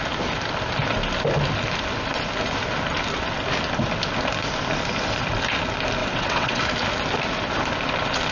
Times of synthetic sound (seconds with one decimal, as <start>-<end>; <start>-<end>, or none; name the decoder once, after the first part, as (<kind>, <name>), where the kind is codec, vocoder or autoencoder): 6.0-6.6 (vocoder, WaveNeXt)

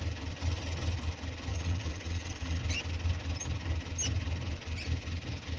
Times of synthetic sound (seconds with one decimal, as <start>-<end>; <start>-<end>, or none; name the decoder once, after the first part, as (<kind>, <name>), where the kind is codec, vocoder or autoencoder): 1.5-2.6 (vocoder, WaveNeXt)

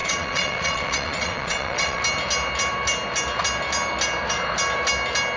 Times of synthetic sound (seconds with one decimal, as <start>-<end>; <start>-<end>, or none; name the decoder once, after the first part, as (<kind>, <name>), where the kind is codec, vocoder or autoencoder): 0.0-2.0 (vocoder, WaveNeXt)

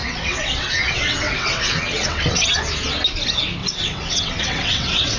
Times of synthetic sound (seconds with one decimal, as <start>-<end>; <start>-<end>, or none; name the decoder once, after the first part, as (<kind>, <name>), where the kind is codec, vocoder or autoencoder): 0.0-2.6 (vocoder, WaveNeXt); 3.6-5.2

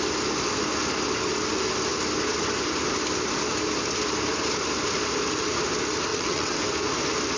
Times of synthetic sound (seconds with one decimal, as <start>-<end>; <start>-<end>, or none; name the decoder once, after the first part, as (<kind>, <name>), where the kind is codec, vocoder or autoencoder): 6.1-6.6 (vocoder, WaveNeXt)

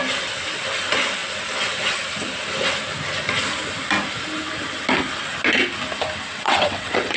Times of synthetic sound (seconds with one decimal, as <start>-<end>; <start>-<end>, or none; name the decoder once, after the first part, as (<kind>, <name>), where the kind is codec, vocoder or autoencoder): 6.3-7.2 (vocoder, WaveNeXt)